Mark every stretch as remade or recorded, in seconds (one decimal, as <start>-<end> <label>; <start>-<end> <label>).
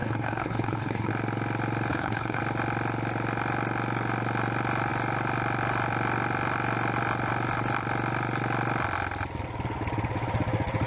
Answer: 0.0-1.1 remade; 1.1-1.9 recorded; 1.9-2.4 remade; 2.4-10.9 recorded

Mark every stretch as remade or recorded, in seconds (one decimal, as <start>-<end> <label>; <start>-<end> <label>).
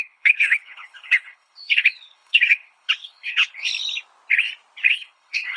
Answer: 0.0-3.7 remade; 3.7-4.9 recorded; 4.9-5.6 remade